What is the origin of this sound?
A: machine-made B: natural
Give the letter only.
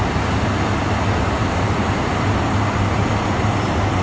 B